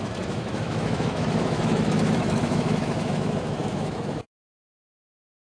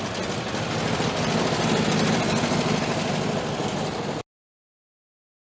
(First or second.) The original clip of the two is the second